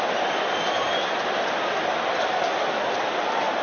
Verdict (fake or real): real